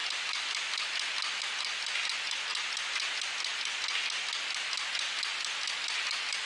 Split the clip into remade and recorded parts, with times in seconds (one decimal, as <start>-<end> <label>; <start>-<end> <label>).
0.0-6.5 recorded